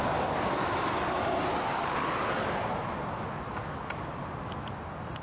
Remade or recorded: recorded